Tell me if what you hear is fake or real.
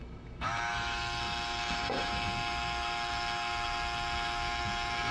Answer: fake